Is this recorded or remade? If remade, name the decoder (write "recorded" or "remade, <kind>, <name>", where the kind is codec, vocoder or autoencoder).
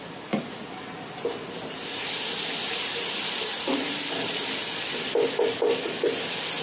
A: recorded